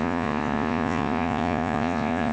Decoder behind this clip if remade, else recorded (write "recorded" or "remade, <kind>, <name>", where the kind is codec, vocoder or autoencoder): remade, vocoder, Vocos